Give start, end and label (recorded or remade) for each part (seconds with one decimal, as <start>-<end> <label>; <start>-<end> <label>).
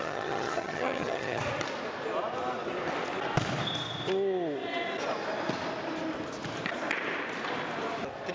0.0-1.4 remade; 1.4-8.3 recorded